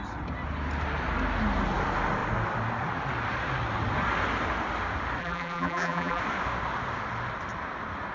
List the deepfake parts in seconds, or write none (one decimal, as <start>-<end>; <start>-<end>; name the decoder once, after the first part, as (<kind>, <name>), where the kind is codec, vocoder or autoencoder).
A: 5.2-6.2 (vocoder, BigVGAN v2)